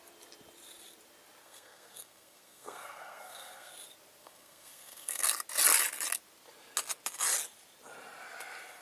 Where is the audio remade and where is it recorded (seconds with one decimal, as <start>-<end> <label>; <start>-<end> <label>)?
0.0-1.4 recorded; 1.4-3.7 remade; 3.7-4.2 recorded; 4.2-5.3 remade; 5.3-8.8 recorded